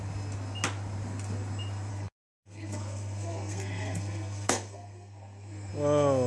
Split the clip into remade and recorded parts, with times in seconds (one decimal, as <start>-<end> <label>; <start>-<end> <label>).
0.0-1.9 recorded; 1.9-5.7 remade; 5.7-6.3 recorded